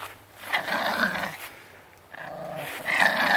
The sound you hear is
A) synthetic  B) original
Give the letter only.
B